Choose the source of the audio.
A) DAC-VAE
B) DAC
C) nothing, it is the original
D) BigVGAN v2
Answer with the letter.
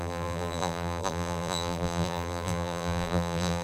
D